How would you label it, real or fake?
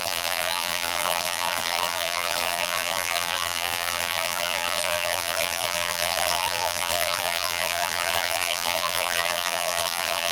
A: fake